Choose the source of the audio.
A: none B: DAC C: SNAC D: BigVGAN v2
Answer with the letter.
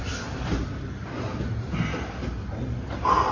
A